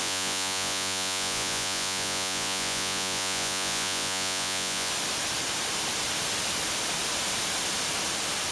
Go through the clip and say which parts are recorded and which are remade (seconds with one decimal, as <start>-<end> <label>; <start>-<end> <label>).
0.0-4.9 remade; 4.9-8.5 recorded